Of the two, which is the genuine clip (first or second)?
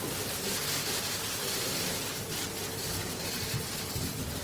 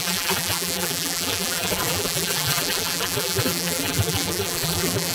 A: first